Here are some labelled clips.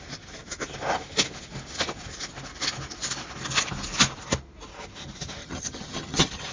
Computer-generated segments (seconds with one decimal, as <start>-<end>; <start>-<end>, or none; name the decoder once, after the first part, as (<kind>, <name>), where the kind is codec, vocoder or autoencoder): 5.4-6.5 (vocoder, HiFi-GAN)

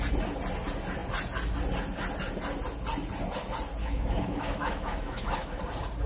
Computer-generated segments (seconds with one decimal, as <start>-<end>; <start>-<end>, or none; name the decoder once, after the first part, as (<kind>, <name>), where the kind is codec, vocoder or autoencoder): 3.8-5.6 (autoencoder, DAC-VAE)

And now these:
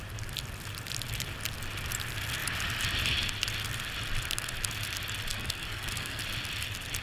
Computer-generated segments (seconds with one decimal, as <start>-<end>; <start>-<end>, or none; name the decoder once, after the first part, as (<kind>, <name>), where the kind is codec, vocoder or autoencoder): 5.3-6.2 (codec, SNAC)